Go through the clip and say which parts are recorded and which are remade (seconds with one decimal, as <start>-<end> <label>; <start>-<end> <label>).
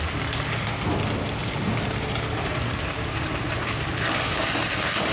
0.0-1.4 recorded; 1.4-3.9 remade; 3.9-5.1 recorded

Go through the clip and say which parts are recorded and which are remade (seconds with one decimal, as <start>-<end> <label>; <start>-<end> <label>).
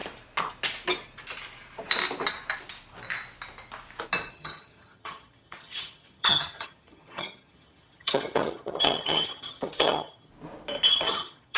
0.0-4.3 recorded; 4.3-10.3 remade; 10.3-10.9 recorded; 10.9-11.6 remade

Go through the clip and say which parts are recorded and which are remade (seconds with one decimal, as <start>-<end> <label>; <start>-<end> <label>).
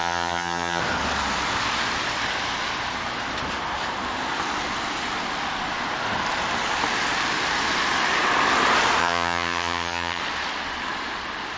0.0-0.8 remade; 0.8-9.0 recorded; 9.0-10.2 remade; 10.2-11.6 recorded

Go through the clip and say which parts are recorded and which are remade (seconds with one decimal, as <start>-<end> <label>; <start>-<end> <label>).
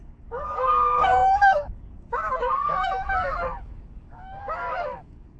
0.0-5.4 remade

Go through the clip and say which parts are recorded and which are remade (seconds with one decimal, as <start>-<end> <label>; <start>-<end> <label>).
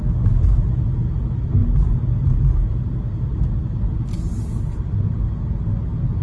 0.0-6.2 recorded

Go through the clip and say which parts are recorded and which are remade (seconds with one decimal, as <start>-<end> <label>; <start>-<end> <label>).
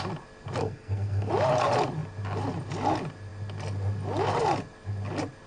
0.0-0.6 recorded; 0.6-1.3 remade; 1.3-5.5 recorded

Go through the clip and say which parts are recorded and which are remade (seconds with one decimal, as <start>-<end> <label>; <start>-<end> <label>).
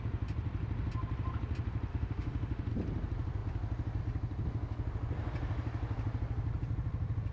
0.0-1.9 recorded; 1.9-2.7 remade; 2.7-7.3 recorded